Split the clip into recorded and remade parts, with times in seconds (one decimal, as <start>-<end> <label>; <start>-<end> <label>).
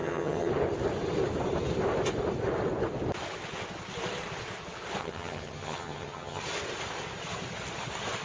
0.0-0.5 remade; 0.5-5.0 recorded; 5.0-6.4 remade; 6.4-8.2 recorded